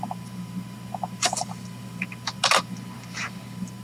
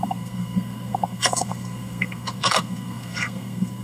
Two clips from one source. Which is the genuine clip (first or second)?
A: first